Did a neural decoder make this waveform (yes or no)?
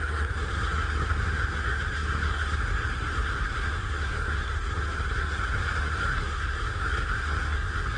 yes